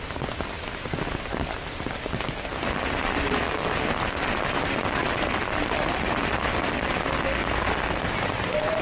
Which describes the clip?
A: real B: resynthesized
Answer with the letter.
A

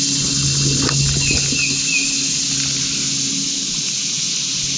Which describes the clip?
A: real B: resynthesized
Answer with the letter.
A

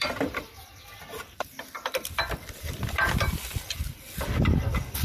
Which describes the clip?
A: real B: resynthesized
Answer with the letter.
B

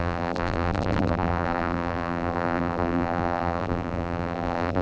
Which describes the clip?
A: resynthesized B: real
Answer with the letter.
A